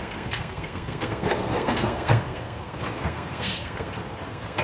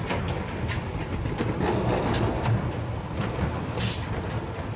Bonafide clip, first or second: second